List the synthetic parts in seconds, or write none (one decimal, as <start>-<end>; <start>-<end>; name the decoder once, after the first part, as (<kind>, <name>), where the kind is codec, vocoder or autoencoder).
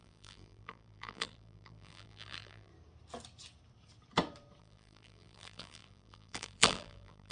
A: 0.0-2.7 (vocoder, BigVGAN v2); 4.6-7.3